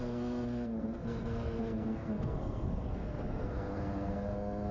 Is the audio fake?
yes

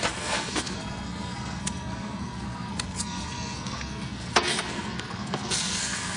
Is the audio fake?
yes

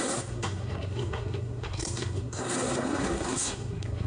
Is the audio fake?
yes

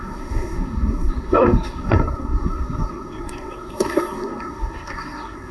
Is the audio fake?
yes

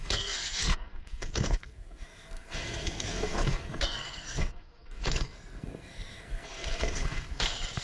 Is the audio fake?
yes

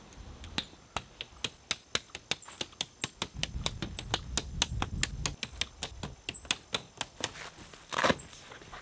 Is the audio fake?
no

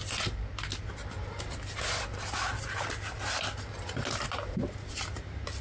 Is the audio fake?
no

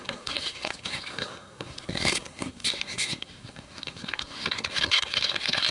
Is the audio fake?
yes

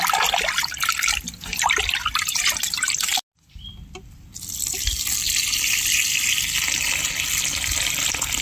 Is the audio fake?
no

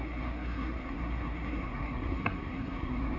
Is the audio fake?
yes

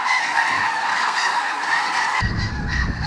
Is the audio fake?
yes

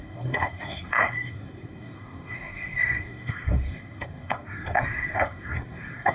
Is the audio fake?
yes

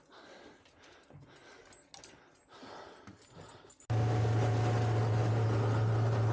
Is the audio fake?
no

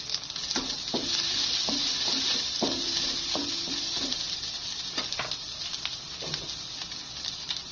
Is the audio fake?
no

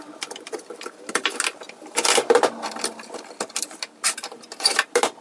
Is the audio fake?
no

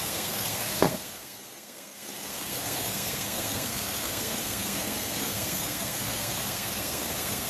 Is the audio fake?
yes